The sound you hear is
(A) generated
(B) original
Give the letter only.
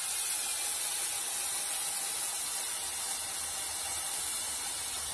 B